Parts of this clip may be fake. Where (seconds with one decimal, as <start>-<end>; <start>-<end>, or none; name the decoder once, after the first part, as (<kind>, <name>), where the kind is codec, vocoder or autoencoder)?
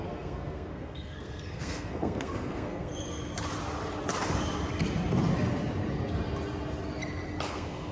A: 0.0-2.9 (codec, SNAC); 7.5-7.9